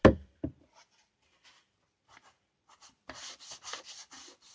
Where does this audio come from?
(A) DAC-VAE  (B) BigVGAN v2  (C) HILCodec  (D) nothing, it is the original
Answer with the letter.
D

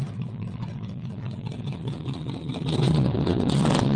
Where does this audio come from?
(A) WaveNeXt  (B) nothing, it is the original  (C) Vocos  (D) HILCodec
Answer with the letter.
A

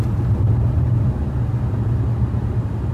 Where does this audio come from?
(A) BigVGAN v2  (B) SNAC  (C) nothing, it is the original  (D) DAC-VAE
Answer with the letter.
C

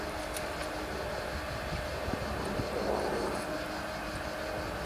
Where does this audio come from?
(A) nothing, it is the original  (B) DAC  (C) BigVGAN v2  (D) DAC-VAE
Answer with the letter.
A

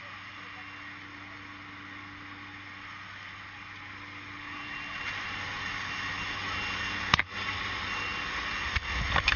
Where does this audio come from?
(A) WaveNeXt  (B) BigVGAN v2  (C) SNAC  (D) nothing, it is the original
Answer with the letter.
D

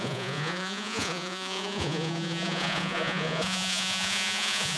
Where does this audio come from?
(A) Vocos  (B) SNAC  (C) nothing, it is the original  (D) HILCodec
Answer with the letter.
A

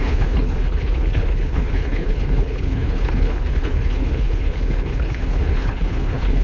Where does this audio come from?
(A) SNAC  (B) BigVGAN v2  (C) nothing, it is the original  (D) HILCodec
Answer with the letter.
D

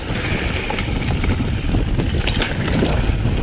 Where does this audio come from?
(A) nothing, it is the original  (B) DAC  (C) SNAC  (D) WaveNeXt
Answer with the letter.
A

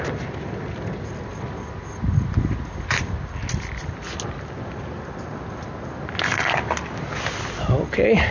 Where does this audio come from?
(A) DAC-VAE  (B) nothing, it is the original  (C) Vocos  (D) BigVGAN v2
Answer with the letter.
B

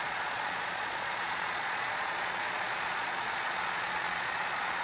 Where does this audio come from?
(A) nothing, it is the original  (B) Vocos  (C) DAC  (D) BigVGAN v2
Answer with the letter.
B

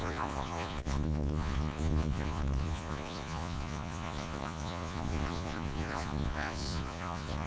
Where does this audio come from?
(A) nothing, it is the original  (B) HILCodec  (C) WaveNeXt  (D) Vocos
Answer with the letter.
D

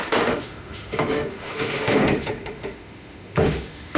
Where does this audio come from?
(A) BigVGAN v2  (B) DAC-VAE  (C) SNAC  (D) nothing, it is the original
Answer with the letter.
B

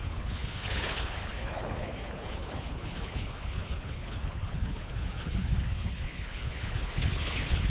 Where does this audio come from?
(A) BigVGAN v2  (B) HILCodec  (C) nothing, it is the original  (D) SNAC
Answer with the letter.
B